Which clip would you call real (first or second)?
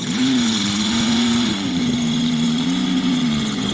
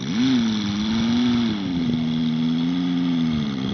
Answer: second